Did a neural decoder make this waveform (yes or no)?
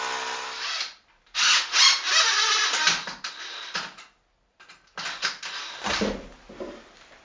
no